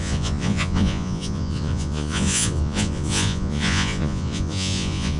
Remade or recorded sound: remade